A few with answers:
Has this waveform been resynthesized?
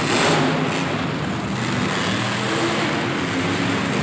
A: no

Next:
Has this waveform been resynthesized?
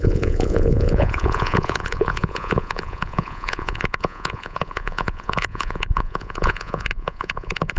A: yes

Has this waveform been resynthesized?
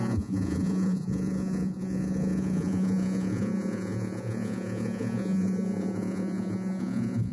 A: yes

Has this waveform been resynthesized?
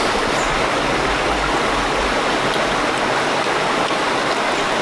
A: no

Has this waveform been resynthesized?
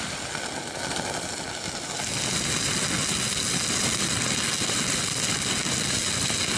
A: no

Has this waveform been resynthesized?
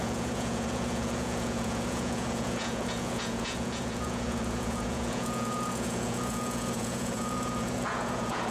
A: yes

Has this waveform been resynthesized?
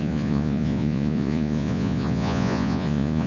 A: yes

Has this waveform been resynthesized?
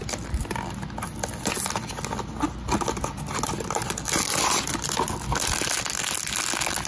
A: no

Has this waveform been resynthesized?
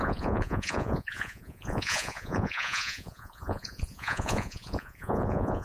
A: yes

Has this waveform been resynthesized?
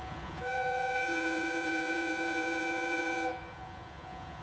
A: yes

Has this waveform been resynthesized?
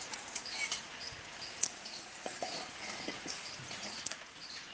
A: yes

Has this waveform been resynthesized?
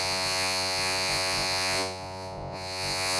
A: yes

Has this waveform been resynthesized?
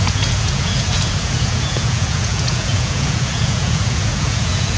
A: yes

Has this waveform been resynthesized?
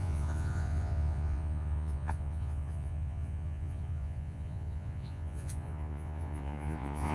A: yes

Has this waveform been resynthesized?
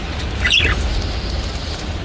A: no